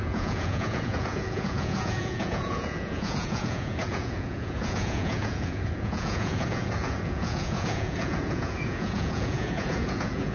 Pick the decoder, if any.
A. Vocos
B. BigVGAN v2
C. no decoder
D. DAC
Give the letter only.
A